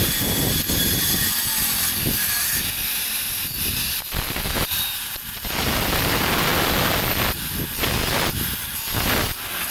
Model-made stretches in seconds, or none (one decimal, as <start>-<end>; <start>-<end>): none